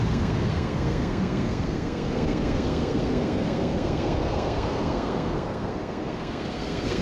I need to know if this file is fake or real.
fake